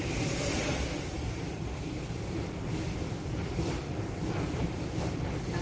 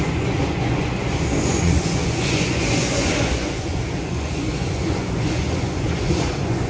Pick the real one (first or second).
first